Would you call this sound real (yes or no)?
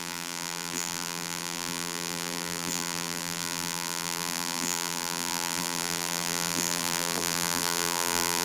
no